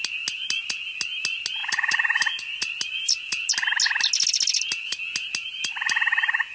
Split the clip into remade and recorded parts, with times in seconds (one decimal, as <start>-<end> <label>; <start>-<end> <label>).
0.0-6.5 recorded